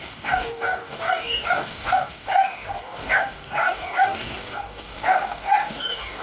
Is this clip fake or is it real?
fake